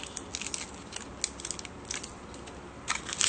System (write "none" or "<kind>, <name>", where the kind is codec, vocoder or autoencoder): none